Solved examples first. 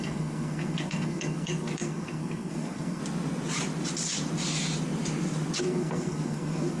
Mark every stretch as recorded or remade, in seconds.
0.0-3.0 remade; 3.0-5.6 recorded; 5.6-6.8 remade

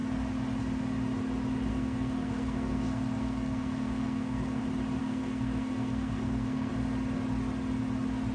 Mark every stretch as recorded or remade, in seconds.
0.0-1.7 recorded; 1.7-4.6 remade; 4.6-5.0 recorded; 5.0-6.7 remade; 6.7-8.3 recorded

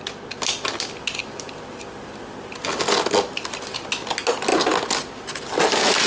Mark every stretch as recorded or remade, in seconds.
0.0-6.1 recorded